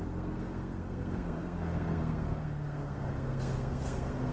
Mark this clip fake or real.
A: fake